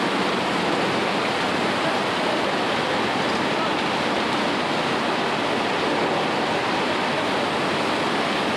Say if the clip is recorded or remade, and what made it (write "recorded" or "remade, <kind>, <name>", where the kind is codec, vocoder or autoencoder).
recorded